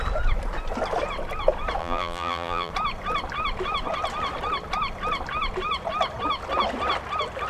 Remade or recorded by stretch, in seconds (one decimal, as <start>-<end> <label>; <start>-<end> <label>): 0.0-1.8 recorded; 1.8-2.7 remade; 2.7-7.5 recorded